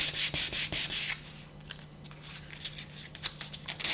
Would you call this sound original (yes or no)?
yes